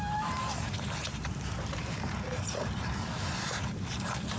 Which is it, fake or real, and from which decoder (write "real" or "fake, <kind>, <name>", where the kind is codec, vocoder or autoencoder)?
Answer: fake, vocoder, BigVGAN v2